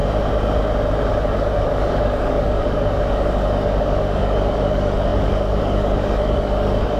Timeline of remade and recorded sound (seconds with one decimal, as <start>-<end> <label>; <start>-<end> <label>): 0.0-1.1 recorded; 1.1-7.0 remade